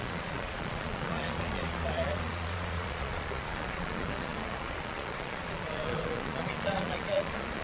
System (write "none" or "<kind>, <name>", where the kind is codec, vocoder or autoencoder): vocoder, Vocos